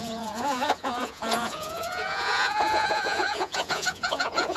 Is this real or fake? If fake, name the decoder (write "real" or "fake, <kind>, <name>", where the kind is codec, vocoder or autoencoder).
fake, vocoder, Vocos